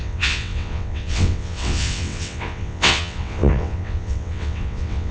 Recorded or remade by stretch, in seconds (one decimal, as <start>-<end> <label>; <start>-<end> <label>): 0.0-5.1 remade